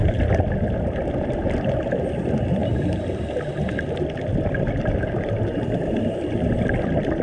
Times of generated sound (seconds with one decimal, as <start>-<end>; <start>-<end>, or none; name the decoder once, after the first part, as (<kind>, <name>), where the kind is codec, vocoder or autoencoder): none